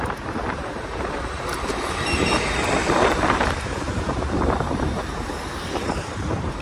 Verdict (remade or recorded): remade